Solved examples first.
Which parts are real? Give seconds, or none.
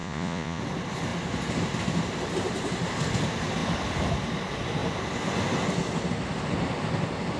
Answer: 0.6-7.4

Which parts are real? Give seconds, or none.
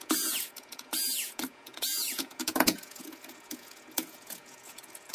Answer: none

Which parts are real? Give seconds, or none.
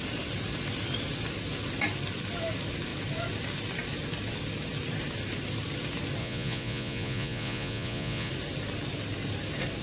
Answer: 0.0-6.2; 8.3-9.8